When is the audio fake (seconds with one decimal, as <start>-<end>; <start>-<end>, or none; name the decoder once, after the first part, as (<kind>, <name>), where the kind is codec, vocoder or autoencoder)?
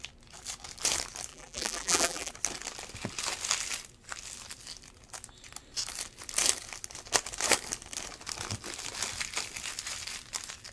1.3-2.3 (vocoder, BigVGAN v2)